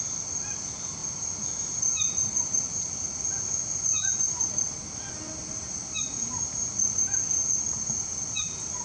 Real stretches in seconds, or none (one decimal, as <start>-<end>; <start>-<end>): 0.0-8.8